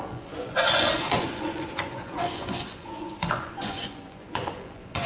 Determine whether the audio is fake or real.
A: fake